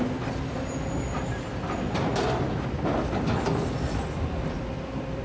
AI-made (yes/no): no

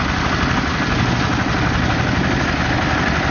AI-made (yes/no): no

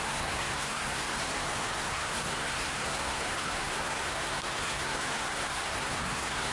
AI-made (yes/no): yes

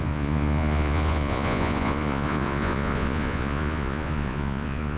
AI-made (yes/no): yes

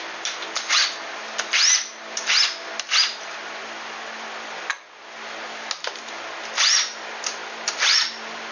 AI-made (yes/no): no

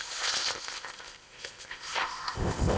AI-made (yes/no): yes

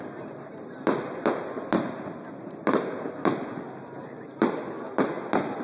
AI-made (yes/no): no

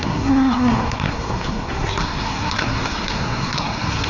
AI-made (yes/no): yes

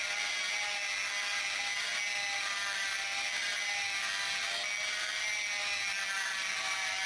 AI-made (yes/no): no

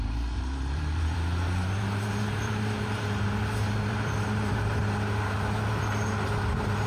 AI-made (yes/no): yes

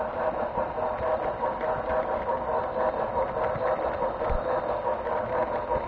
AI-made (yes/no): no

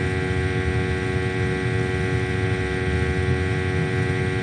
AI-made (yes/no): no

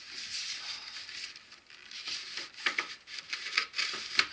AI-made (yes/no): no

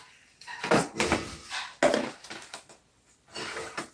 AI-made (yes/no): no